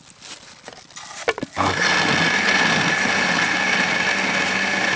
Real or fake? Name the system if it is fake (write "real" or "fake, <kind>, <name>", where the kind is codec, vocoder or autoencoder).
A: real